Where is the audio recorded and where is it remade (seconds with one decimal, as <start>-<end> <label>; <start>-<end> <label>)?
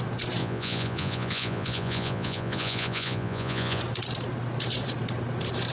0.0-0.4 recorded; 0.4-3.8 remade; 3.8-5.7 recorded